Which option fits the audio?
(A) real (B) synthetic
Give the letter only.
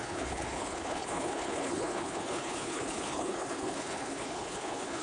B